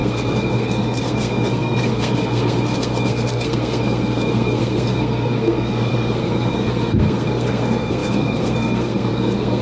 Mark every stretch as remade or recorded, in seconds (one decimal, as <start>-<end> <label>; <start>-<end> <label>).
0.0-9.6 remade